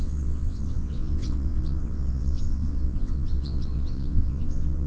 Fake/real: fake